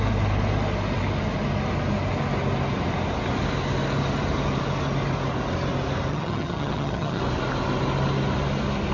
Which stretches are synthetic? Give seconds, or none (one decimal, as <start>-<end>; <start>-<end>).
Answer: 6.1-7.2